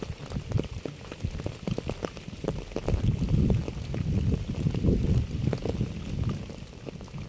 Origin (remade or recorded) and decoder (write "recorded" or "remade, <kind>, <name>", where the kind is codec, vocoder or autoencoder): recorded